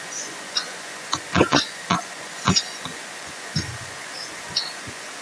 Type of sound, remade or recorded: remade